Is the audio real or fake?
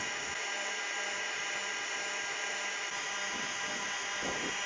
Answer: real